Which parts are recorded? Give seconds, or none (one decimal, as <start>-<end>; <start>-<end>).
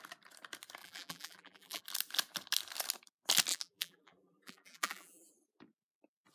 0.0-0.8; 1.8-3.5; 5.3-6.3